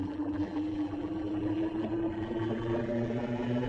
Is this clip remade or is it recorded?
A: remade